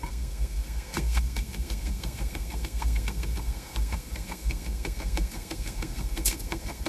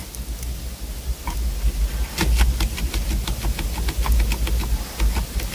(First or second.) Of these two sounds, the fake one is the first